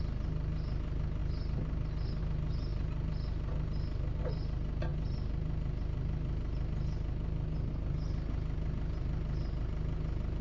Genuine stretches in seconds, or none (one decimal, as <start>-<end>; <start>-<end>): 0.0-10.4